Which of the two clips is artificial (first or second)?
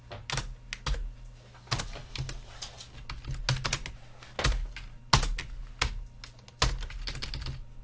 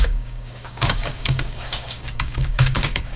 second